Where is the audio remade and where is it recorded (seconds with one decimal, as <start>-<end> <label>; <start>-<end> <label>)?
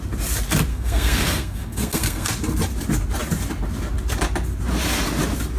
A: 0.0-0.7 recorded; 0.7-2.3 remade; 2.3-5.6 recorded